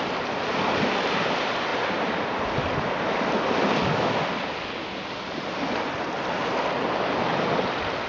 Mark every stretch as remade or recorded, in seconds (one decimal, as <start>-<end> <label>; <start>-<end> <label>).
0.0-8.1 recorded